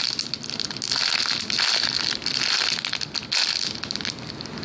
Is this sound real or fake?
real